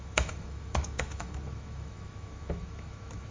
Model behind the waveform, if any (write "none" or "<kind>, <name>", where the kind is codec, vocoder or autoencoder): autoencoder, DAC-VAE